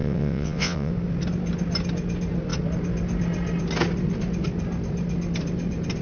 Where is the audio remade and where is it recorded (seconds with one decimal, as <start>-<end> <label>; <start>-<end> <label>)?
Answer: 0.0-0.9 remade; 0.9-6.0 recorded